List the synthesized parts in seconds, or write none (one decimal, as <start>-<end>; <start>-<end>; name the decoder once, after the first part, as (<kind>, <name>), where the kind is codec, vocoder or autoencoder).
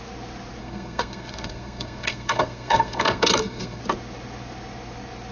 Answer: 0.6-3.8 (codec, SNAC)